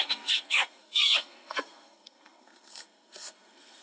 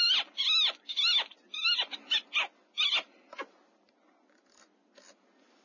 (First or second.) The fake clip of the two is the first